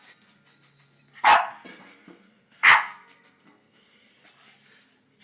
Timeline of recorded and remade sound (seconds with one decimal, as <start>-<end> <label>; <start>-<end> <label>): 0.0-1.7 recorded; 1.7-4.1 remade; 4.1-5.2 recorded